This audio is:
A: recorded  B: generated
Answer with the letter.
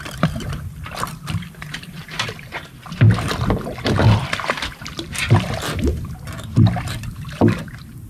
B